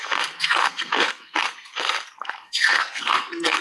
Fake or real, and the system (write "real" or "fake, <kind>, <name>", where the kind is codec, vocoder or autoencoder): fake, codec, SNAC